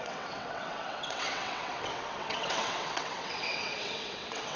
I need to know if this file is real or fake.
fake